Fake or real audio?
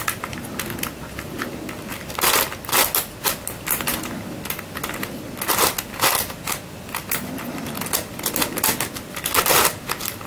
real